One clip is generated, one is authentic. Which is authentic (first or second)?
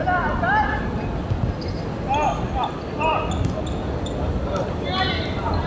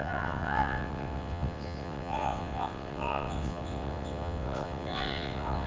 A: first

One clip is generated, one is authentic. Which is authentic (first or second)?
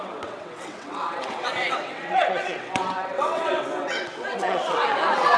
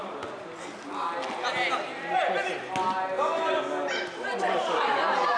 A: second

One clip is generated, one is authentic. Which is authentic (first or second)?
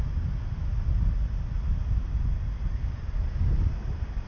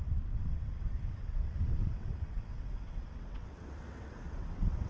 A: first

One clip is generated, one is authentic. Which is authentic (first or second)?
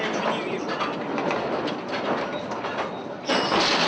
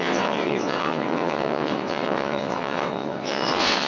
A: first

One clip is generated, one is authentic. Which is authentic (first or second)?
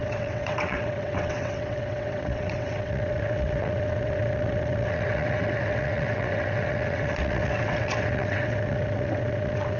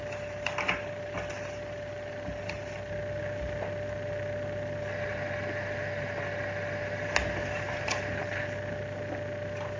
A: second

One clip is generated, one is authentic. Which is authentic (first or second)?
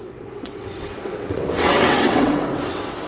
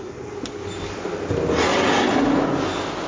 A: second